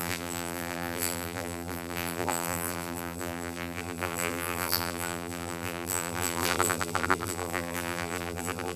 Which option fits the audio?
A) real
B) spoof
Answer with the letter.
B